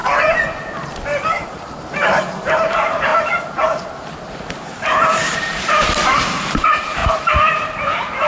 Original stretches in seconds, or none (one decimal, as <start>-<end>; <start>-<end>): 0.0-1.5; 3.1-4.2; 7.0-7.5